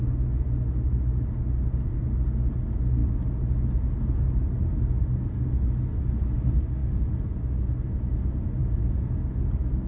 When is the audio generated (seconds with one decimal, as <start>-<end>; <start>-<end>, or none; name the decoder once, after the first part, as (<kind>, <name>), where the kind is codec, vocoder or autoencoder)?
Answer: 8.6-9.2 (vocoder, Vocos)